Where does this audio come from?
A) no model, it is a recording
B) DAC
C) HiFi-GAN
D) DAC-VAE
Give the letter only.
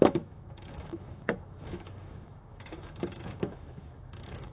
D